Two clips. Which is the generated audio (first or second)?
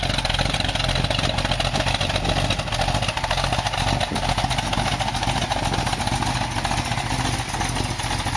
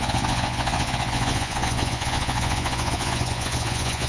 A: second